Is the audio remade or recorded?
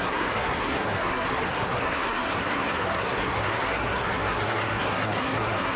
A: remade